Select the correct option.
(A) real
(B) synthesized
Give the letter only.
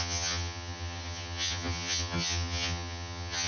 B